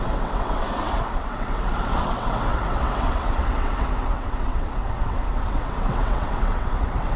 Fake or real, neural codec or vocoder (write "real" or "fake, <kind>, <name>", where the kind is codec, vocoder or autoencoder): fake, vocoder, WaveNeXt